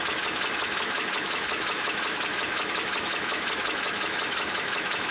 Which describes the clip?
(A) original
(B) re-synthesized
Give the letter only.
B